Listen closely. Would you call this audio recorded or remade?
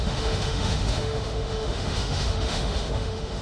remade